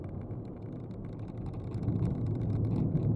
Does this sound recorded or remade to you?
recorded